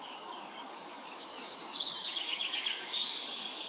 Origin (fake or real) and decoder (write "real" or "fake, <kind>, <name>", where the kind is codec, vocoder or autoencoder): fake, codec, DAC